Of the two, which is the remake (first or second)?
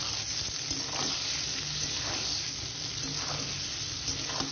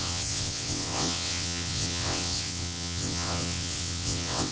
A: second